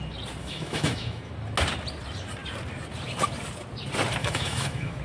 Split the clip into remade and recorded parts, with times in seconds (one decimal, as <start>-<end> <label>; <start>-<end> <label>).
0.0-0.4 recorded; 0.4-1.3 remade; 1.3-4.2 recorded; 4.2-5.0 remade